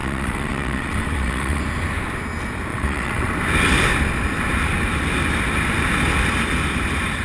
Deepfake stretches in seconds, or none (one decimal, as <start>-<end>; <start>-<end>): 0.0-1.6; 2.7-3.3